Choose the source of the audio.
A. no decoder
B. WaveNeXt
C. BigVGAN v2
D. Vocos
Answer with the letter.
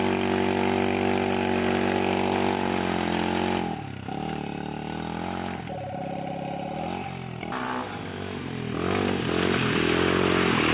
A